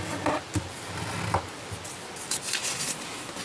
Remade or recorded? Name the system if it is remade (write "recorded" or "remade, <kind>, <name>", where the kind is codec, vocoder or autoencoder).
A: recorded